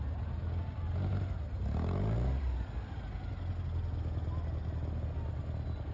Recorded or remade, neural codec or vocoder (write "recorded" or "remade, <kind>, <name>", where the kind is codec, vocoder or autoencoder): recorded